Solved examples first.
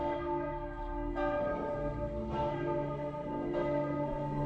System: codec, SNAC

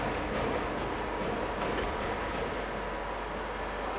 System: none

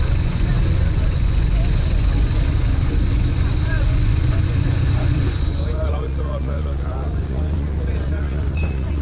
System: vocoder, Vocos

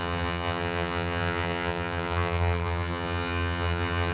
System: vocoder, HiFi-GAN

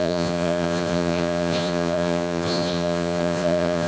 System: vocoder, Vocos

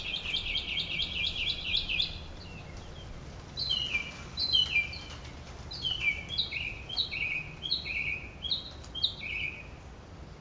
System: none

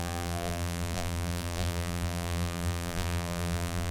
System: vocoder, BigVGAN v2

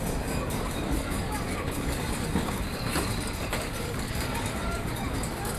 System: codec, DAC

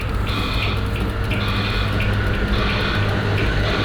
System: none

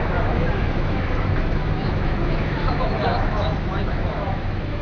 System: autoencoder, DAC-VAE